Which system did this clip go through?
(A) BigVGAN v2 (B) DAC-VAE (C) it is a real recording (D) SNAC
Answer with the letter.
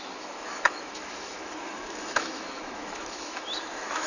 B